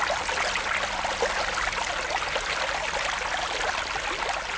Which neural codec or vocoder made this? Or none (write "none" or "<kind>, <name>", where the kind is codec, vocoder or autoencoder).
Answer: none